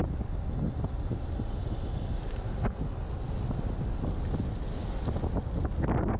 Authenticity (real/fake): real